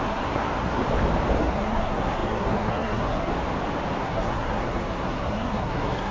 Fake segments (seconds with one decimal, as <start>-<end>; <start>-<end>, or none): 0.0-0.8; 1.4-3.3; 4.0-6.1